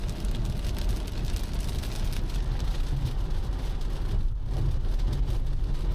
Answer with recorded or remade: recorded